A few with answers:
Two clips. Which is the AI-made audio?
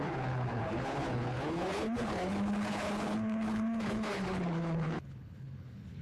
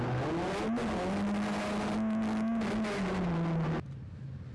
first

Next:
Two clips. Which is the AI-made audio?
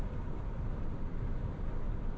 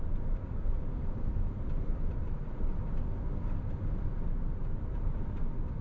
first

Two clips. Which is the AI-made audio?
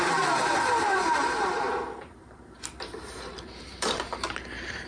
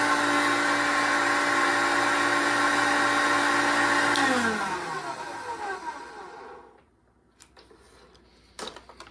first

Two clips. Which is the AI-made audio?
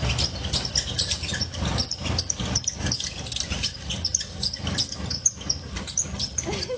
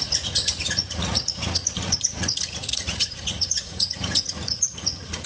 second